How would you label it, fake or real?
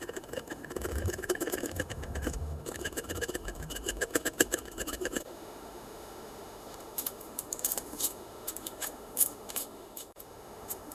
fake